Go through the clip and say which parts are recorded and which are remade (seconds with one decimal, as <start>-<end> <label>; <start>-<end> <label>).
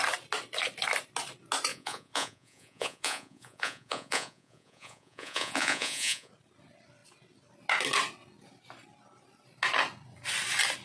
0.0-1.7 recorded; 1.7-6.3 remade; 6.3-10.8 recorded